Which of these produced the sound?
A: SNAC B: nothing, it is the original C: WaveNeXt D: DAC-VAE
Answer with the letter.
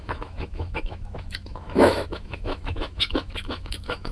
D